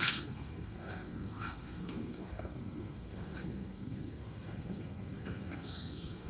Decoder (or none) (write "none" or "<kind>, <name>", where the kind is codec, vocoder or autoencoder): codec, SNAC